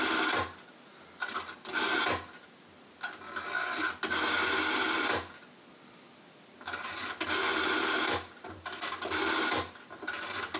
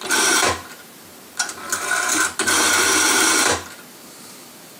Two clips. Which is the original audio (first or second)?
first